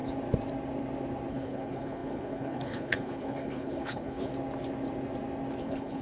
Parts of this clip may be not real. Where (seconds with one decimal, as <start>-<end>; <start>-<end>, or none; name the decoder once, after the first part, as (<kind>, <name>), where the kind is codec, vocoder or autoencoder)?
1.3-4.3 (codec, HILCodec); 5.6-6.0